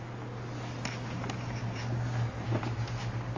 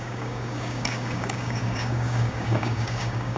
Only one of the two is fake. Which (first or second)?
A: second